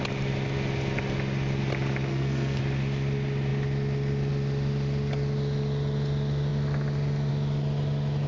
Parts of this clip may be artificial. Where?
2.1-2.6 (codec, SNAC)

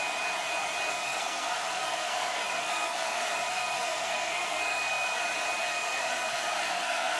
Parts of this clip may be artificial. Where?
0.9-5.2 (codec, SNAC); 5.7-7.2

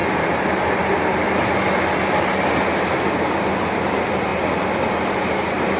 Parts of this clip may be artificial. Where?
none

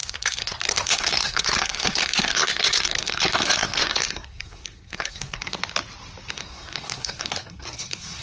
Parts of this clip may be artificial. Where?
0.0-5.6 (codec, SNAC); 6.3-8.2